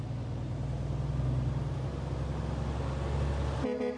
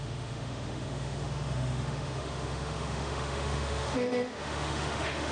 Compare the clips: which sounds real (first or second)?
first